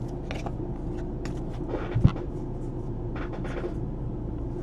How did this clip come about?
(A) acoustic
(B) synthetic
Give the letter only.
A